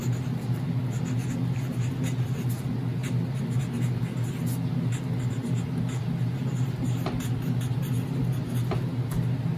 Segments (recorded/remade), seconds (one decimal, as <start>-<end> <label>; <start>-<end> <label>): 0.0-9.6 recorded